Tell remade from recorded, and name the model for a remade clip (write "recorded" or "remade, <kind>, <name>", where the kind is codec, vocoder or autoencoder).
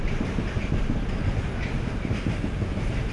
recorded